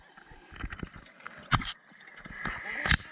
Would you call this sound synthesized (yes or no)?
no